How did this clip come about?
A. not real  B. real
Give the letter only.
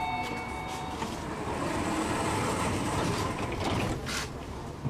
A